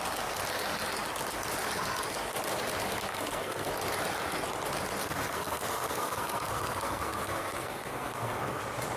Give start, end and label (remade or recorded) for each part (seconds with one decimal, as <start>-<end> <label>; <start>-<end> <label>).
0.0-3.1 recorded; 3.1-3.7 remade; 3.7-5.0 recorded; 5.0-8.6 remade; 8.6-9.0 recorded